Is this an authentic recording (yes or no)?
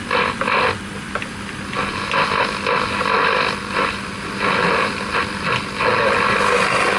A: yes